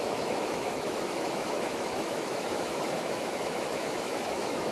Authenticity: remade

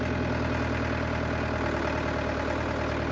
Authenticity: recorded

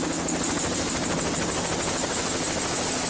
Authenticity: recorded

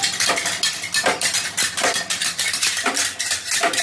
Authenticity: recorded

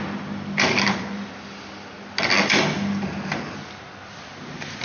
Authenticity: recorded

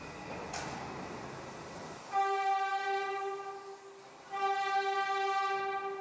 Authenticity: recorded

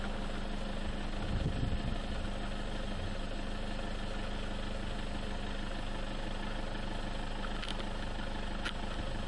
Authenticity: recorded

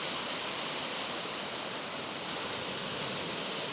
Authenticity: recorded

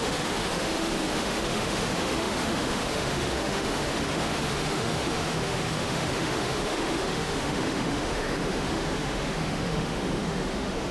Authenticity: remade